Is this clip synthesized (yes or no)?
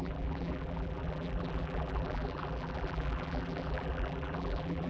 yes